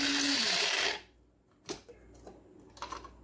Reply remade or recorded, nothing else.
recorded